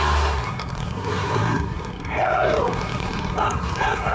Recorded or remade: remade